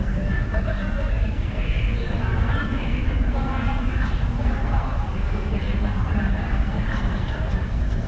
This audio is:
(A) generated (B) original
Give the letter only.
A